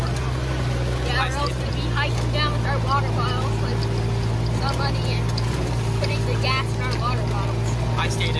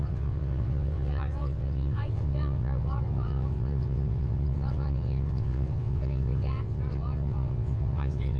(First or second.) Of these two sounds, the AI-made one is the second